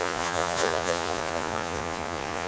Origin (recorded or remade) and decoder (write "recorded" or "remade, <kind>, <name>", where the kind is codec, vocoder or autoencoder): remade, vocoder, Vocos